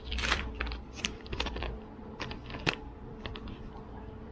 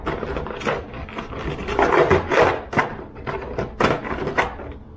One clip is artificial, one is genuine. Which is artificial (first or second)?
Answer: first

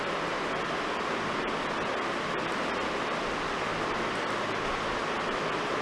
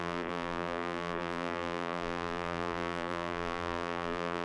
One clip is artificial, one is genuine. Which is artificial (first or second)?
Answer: second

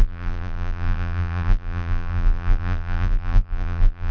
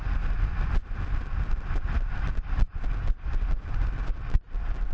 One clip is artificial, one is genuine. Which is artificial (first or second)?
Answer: first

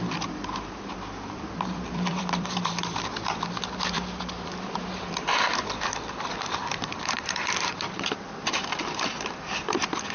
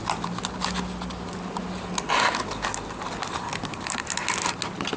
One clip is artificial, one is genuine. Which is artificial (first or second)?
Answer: first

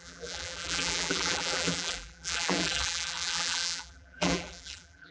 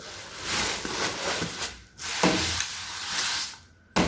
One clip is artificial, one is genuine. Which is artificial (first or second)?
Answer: first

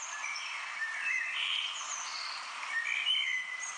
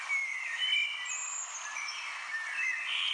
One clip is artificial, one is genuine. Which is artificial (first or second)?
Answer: first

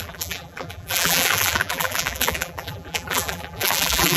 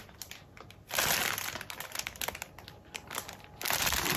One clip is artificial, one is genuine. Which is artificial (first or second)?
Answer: first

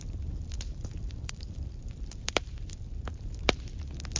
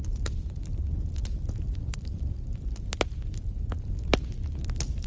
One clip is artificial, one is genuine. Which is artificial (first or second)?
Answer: first